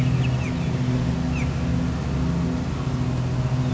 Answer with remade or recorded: recorded